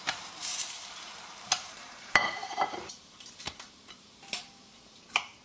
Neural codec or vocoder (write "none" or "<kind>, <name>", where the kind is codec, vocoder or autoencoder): vocoder, BigVGAN v2